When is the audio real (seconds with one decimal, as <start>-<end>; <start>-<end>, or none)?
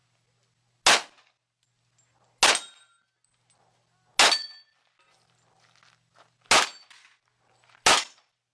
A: 0.0-8.5